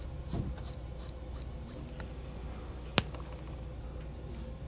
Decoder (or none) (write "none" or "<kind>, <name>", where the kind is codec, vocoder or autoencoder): none